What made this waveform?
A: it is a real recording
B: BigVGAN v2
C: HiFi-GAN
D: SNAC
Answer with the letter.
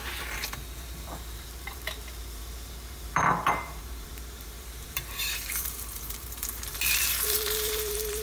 B